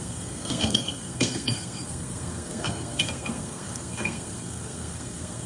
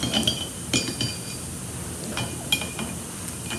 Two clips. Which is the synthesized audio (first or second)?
first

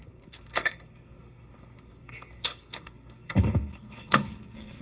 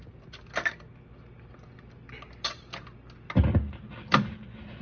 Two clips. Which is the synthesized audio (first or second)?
first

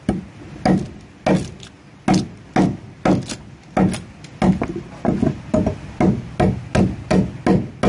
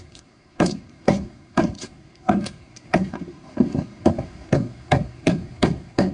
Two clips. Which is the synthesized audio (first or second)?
second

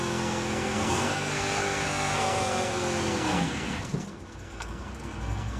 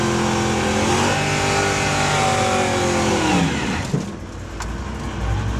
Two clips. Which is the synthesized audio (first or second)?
first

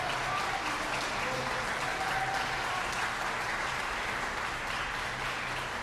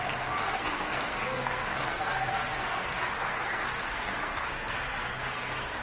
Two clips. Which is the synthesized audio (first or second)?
second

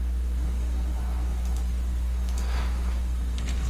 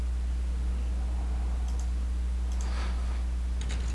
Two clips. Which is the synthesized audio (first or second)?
first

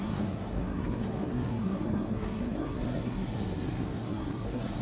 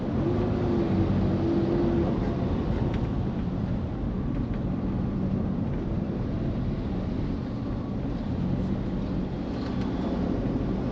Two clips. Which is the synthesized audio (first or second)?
first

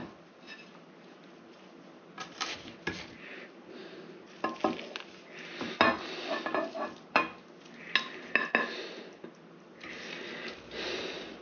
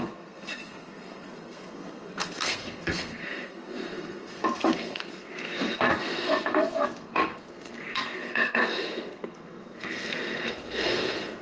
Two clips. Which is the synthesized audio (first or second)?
second